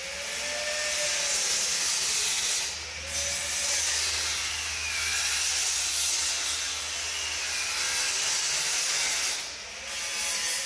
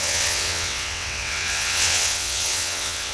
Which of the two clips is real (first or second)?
first